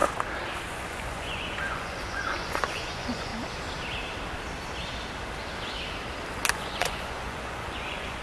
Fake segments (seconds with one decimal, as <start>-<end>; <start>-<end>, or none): 0.7-3.3; 6.5-8.2